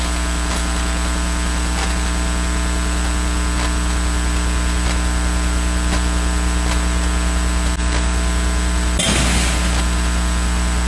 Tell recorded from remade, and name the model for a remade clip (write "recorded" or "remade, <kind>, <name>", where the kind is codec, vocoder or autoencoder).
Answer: recorded